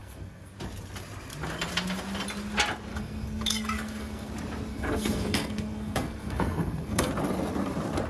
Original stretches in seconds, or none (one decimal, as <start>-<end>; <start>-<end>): 0.5-2.9; 4.3-4.7; 7.1-8.1